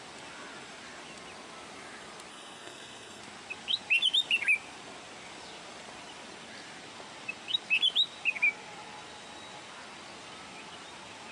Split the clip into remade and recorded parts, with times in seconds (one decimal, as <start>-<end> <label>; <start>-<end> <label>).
0.0-2.3 recorded; 2.3-3.2 remade; 3.2-11.3 recorded